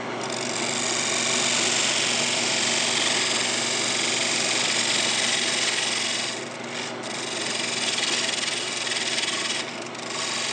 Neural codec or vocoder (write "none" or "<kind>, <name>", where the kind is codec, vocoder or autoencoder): none